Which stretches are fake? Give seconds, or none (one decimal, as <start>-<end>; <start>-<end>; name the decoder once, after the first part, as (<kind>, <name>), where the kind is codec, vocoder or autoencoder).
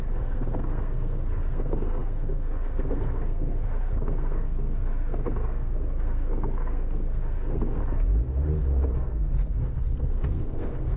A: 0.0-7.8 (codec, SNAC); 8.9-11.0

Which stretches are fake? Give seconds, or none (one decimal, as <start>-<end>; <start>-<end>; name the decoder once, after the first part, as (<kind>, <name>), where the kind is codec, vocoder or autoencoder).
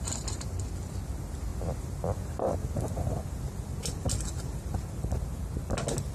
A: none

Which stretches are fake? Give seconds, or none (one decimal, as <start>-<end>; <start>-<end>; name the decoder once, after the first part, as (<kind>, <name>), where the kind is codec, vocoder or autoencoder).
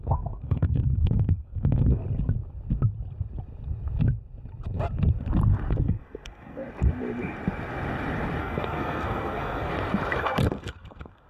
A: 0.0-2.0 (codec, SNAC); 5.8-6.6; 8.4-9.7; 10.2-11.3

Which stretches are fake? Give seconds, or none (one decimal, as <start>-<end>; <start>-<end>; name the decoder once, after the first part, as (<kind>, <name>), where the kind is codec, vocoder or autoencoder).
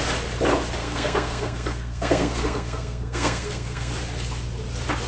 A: 0.8-3.9 (codec, SNAC)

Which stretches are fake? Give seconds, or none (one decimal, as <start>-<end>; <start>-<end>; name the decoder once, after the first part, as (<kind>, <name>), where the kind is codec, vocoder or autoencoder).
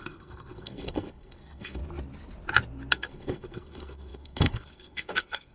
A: 0.0-1.8 (codec, SNAC); 2.9-5.5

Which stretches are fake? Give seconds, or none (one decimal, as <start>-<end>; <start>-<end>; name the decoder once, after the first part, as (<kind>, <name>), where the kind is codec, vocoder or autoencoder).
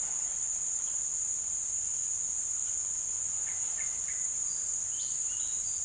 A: none